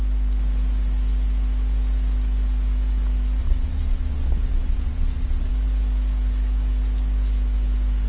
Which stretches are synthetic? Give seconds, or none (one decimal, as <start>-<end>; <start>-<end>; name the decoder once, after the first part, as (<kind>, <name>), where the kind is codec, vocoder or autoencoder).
3.4-5.5 (vocoder, Vocos)